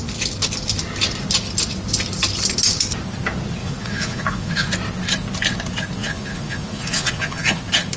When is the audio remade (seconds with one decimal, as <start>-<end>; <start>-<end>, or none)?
3.6-4.7; 6.0-7.6